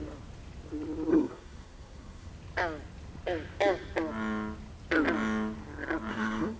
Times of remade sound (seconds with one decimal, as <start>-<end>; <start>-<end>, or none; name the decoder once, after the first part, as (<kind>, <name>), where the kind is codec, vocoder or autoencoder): 1.1-2.3 (codec, SNAC); 6.1-6.6